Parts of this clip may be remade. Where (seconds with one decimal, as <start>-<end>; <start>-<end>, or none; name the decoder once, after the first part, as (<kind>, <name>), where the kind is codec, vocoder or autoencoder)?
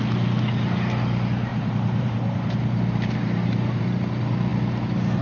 1.5-3.8 (vocoder, BigVGAN v2)